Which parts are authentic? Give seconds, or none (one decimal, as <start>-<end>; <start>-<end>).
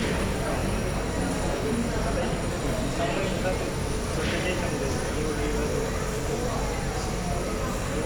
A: 0.0-8.1